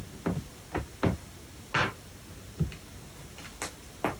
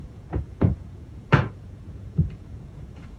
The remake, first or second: second